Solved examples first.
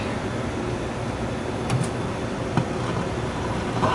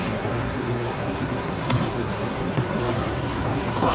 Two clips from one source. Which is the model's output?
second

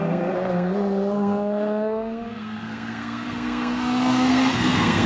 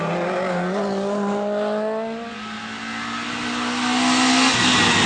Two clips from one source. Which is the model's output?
first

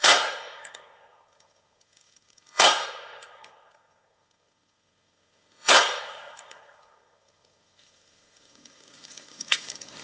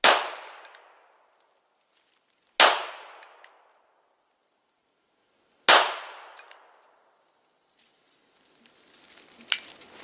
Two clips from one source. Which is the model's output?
first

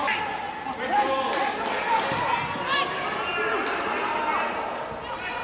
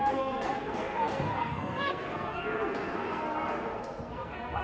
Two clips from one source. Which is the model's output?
second